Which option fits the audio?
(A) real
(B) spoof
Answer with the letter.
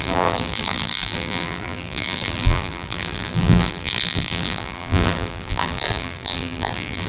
B